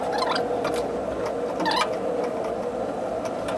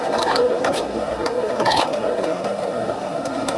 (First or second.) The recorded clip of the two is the first